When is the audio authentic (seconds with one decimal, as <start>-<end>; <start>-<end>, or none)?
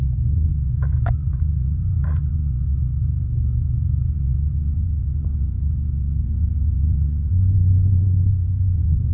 none